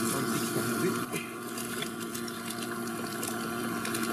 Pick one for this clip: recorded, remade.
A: recorded